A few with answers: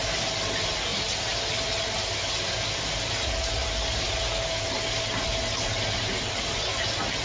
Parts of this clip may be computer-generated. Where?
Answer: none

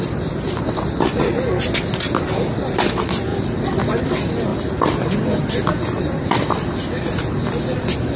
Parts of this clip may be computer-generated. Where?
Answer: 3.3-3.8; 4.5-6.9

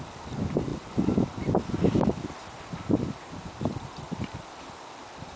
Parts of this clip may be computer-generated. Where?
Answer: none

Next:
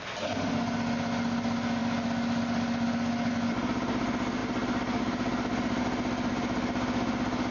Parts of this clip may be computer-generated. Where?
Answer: none

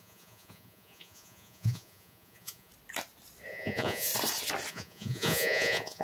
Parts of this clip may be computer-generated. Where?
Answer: 0.0-2.7; 3.5-4.1; 4.7-6.0

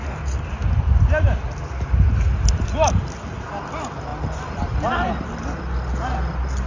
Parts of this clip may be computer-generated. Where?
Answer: none